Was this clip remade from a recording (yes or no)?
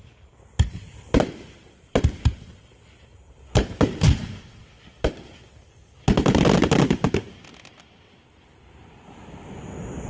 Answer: no